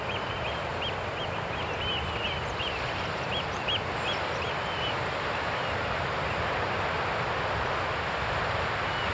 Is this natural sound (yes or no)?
yes